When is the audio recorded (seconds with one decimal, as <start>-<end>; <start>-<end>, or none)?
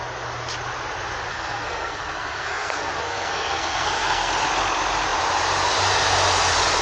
0.0-1.3; 4.3-6.8